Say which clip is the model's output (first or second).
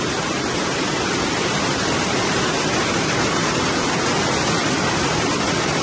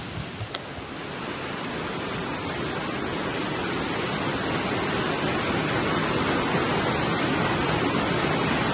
first